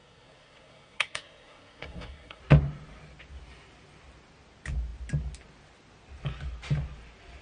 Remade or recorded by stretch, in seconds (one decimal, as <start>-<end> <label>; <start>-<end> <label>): 0.0-2.4 remade; 2.4-7.4 recorded